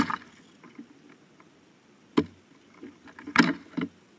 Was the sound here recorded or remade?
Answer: recorded